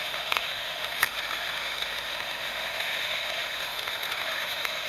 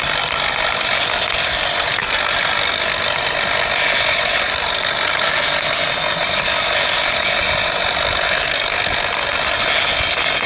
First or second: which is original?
second